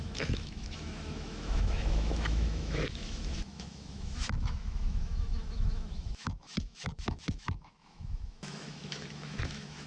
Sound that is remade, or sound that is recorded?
remade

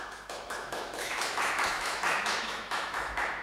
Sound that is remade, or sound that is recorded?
remade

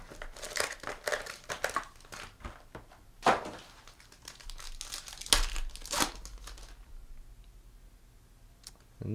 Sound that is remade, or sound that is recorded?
recorded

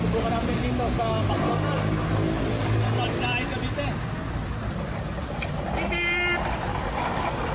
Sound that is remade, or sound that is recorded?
recorded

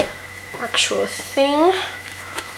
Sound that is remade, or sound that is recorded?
remade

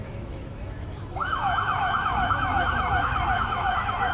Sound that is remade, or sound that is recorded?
remade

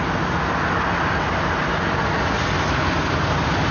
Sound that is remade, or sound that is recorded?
recorded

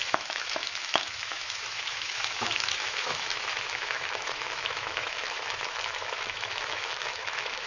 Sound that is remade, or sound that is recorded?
remade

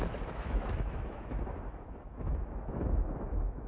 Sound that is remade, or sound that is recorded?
remade